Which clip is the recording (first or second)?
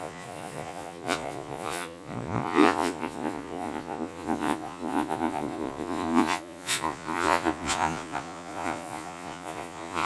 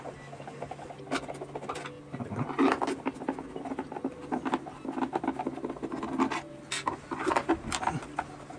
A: second